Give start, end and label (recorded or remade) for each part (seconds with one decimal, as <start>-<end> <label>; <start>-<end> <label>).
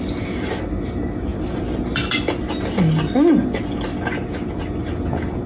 0.0-5.5 recorded